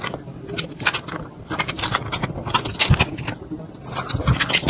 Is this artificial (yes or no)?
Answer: no